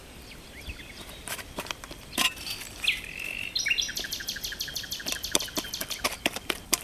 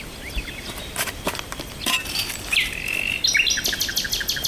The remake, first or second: first